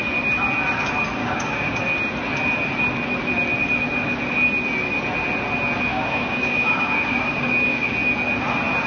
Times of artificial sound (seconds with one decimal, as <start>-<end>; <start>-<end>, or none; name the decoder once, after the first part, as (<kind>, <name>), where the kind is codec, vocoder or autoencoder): 1.2-1.8 (codec, DAC); 5.9-7.9